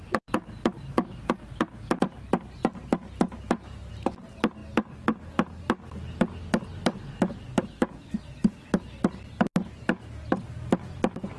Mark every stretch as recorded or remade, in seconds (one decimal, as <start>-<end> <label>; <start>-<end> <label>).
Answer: 0.0-11.4 recorded